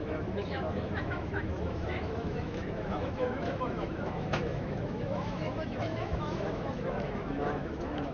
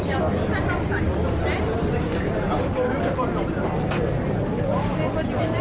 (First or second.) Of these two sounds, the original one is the second